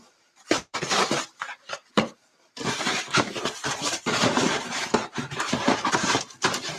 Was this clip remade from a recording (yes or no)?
yes